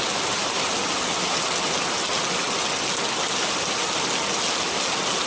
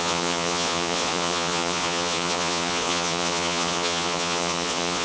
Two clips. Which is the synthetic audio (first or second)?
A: second